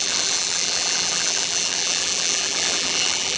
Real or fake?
fake